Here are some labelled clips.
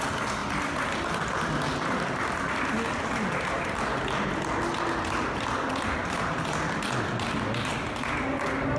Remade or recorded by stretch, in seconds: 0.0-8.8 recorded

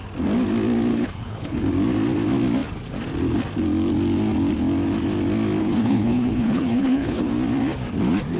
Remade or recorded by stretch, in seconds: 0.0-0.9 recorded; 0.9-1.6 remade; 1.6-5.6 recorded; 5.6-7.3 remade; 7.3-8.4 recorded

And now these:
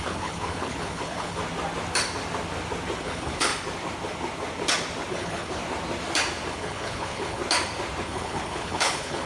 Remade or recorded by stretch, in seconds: 0.0-1.4 remade; 1.4-3.0 recorded; 3.0-3.5 remade; 3.5-5.1 recorded; 5.1-5.6 remade; 5.6-6.5 recorded; 6.5-7.4 remade; 7.4-8.0 recorded; 8.0-9.3 remade

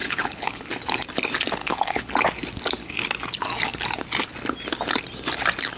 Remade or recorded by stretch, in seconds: 0.0-0.7 remade; 0.7-1.6 recorded; 1.6-2.1 remade; 2.1-5.8 recorded

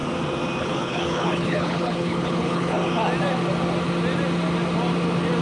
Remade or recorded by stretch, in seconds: 0.0-0.6 recorded; 0.6-2.8 remade; 2.8-5.4 recorded